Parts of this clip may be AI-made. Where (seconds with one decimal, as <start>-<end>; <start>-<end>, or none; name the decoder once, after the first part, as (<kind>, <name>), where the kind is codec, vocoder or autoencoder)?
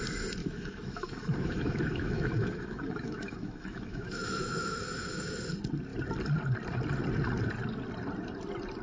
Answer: 0.4-5.4 (autoencoder, DAC-VAE)